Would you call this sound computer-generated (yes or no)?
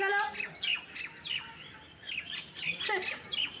no